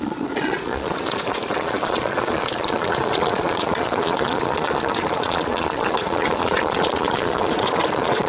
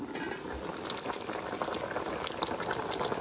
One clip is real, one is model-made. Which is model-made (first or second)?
first